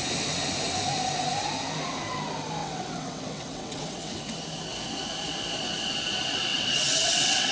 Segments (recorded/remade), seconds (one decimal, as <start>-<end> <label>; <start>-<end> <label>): 0.0-2.6 recorded; 2.6-4.2 remade; 4.2-6.5 recorded; 6.5-7.5 remade